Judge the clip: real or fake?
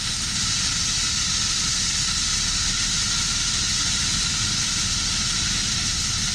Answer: real